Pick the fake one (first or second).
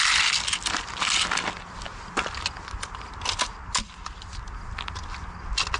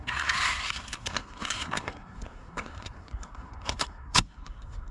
second